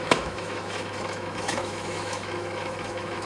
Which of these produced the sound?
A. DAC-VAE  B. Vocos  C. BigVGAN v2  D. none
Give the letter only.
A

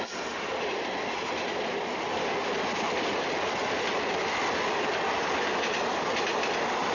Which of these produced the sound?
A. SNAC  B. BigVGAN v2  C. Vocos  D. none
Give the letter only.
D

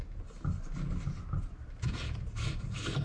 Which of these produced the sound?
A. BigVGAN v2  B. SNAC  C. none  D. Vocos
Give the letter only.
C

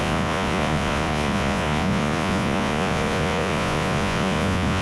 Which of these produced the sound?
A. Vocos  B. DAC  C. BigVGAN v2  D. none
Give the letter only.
A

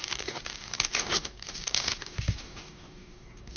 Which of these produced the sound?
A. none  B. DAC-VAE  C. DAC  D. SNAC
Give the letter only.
C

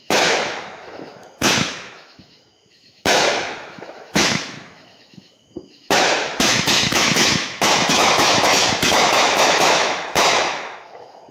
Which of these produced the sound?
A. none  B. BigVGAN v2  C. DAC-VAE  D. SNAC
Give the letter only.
C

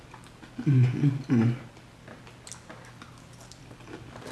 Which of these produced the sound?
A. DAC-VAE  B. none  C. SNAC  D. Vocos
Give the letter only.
B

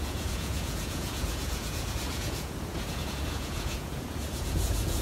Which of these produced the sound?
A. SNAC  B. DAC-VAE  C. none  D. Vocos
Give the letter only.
D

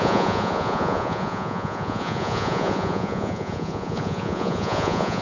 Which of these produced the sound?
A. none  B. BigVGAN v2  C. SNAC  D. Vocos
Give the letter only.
D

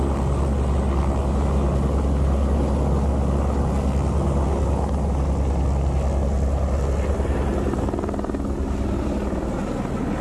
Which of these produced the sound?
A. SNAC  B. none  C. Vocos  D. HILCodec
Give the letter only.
B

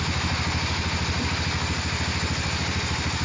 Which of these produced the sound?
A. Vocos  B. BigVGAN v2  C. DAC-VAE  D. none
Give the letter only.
D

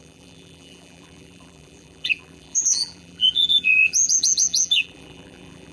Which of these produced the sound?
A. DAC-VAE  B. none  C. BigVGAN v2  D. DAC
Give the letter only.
C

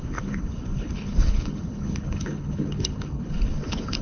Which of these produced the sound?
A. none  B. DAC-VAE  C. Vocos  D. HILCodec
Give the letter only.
D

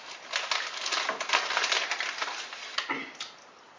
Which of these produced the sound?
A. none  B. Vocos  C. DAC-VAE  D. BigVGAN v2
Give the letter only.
A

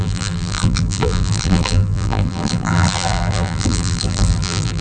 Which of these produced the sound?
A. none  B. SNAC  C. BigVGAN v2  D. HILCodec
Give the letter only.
C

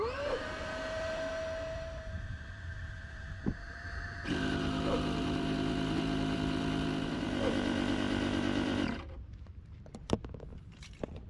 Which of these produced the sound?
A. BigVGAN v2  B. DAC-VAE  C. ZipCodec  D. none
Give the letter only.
A